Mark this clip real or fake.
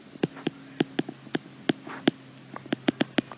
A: real